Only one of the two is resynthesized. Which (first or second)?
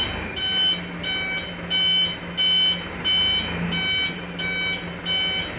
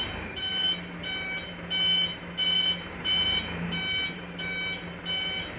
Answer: second